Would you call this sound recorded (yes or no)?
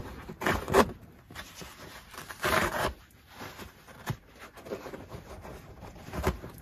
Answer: no